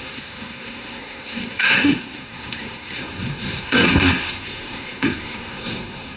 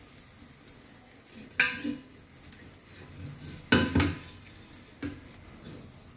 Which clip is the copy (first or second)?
first